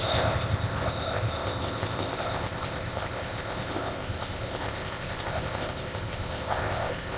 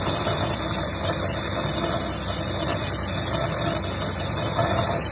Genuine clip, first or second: second